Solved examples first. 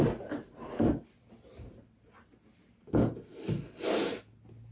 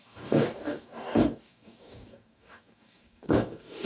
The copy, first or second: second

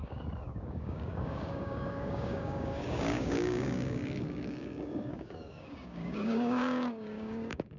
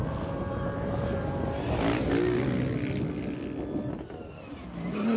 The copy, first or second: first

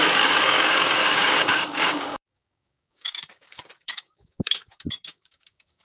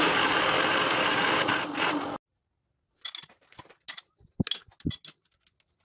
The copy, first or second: first